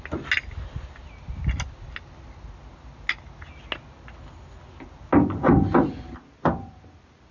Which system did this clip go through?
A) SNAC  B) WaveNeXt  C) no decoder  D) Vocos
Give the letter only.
C